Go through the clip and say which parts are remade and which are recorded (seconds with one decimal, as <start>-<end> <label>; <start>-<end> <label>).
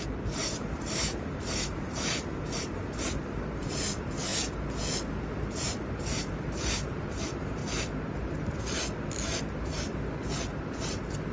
0.0-4.3 remade; 4.3-5.1 recorded; 5.1-7.6 remade; 7.6-9.4 recorded; 9.4-11.3 remade